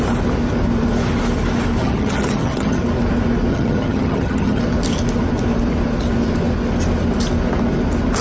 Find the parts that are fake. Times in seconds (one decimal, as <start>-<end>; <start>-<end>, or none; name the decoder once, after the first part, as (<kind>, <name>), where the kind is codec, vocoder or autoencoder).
1.8-2.8 (vocoder, HiFi-GAN); 3.5-4.6